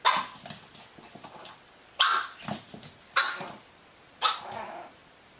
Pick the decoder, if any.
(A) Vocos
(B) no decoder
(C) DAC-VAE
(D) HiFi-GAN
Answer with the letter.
B